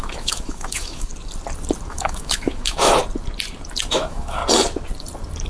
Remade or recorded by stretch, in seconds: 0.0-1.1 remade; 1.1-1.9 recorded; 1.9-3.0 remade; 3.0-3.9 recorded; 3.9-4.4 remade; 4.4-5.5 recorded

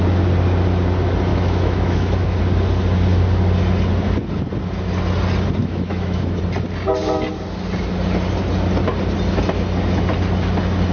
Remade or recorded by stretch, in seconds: 0.0-1.3 recorded; 1.3-2.4 remade; 2.4-5.6 recorded; 5.6-6.4 remade; 6.4-10.9 recorded

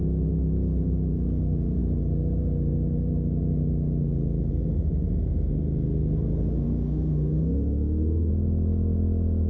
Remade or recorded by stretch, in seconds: 0.0-6.5 recorded; 6.5-8.3 remade; 8.3-9.5 recorded

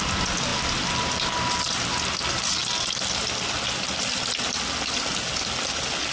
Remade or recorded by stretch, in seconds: 0.0-6.1 recorded

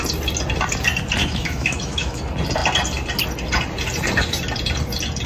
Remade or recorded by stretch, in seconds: 0.0-1.2 recorded; 1.2-2.2 remade; 2.2-5.3 recorded

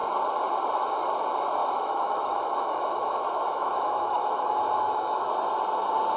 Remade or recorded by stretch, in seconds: 0.0-1.6 recorded; 1.6-5.3 remade; 5.3-6.2 recorded

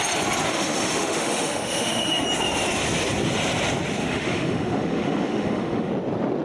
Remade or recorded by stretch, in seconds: 0.0-0.5 recorded; 0.5-2.2 remade; 2.2-4.0 recorded; 4.0-5.9 remade; 5.9-6.4 recorded

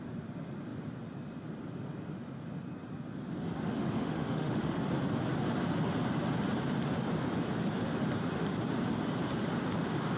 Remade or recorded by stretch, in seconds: 0.0-3.8 recorded; 3.8-4.8 remade; 4.8-10.2 recorded